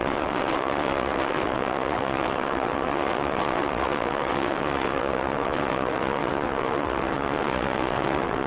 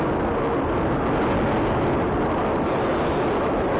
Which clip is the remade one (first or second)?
first